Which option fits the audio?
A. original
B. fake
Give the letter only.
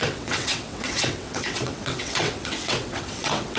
B